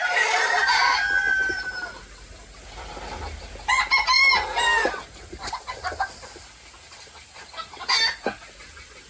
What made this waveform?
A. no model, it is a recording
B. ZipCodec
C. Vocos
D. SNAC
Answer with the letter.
A